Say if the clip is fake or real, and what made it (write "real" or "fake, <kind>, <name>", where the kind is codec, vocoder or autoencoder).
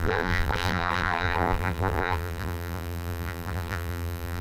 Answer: fake, vocoder, BigVGAN v2